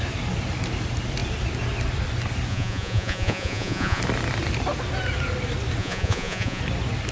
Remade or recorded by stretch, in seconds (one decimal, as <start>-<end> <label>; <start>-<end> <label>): 0.0-2.5 recorded; 2.5-4.0 remade; 4.0-5.8 recorded; 5.8-6.6 remade; 6.6-7.1 recorded

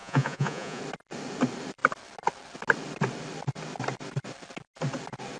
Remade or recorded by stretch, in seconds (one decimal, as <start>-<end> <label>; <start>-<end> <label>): 0.0-0.8 remade; 0.8-5.4 recorded